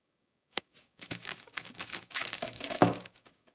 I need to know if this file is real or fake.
fake